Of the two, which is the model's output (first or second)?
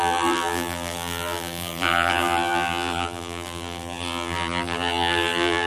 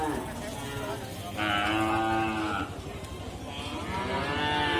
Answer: first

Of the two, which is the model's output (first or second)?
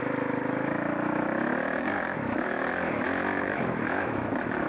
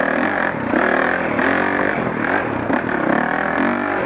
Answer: first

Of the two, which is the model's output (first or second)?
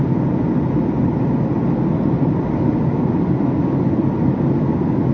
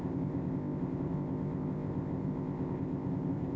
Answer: second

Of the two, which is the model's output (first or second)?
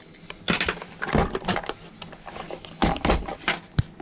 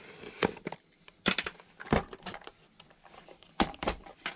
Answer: second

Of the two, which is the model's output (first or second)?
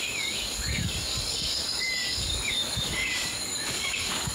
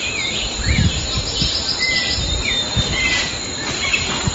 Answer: first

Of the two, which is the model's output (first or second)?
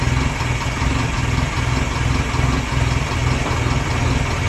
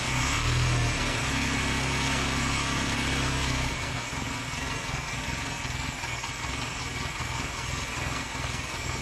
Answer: second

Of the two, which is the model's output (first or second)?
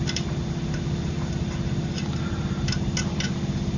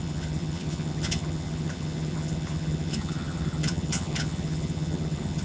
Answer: second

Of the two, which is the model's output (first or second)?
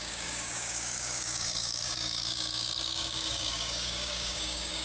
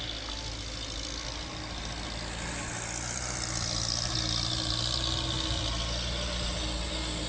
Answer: first